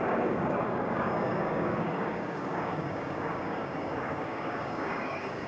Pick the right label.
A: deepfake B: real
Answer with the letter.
A